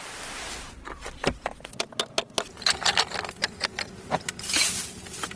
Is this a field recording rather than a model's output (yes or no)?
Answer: yes